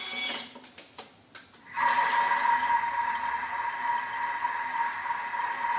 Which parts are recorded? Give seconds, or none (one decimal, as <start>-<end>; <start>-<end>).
0.0-5.8